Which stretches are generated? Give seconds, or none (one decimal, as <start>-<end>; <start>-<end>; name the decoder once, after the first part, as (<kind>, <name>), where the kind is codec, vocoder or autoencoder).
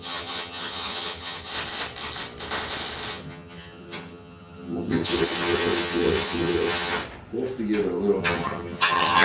0.0-1.5 (vocoder, HiFi-GAN); 3.1-7.0; 8.2-9.2